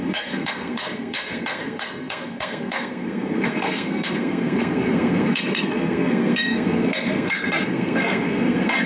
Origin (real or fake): fake